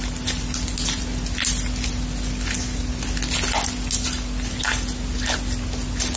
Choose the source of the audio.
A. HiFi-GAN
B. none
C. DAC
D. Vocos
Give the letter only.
B